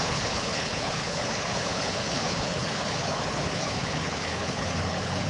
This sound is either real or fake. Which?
fake